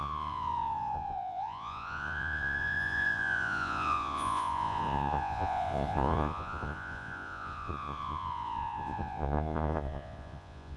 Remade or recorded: remade